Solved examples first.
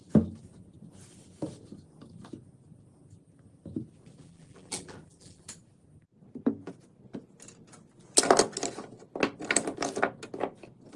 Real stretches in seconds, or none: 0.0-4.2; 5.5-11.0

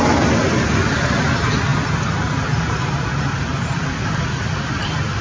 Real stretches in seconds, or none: 0.0-5.2

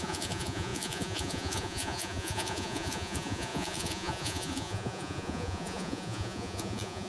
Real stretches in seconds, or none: none

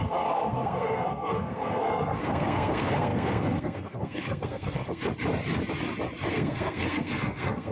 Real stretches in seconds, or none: 5.0-6.3

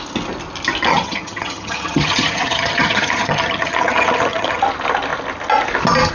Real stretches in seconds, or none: 0.0-0.9; 4.6-6.1

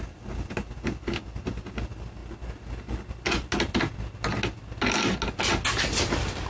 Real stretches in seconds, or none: 0.0-6.5

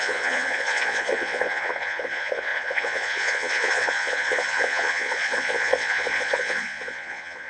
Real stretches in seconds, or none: none

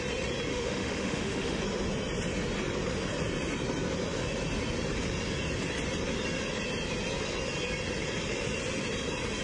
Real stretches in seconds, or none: 0.0-0.5; 1.6-9.4